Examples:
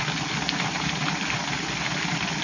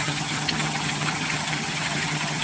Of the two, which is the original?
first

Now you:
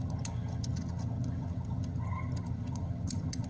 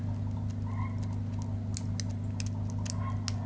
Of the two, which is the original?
second